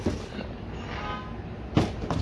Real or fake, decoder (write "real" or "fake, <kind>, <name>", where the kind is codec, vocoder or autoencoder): real